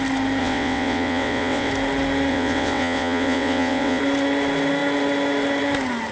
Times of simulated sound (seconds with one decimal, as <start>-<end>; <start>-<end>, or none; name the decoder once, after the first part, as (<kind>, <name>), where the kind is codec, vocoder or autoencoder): 0.4-1.7 (vocoder, WaveNeXt); 2.3-4.0